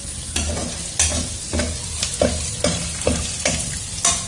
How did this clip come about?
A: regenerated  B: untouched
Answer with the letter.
B